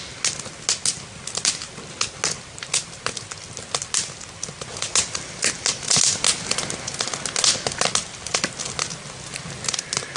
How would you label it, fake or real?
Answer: real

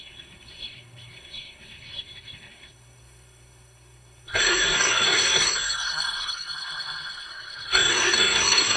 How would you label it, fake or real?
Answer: fake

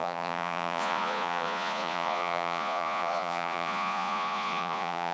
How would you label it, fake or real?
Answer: fake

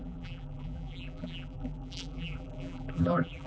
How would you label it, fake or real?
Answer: fake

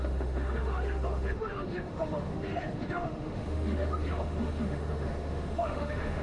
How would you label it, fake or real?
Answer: fake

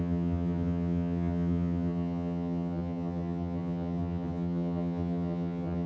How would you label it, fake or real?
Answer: fake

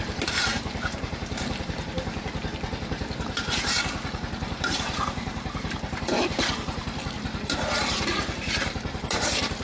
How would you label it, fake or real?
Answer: fake